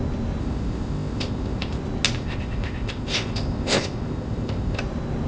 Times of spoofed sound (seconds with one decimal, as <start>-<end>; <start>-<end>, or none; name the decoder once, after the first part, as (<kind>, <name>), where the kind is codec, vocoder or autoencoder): 0.4-1.8 (codec, ZipCodec); 2.2-4.8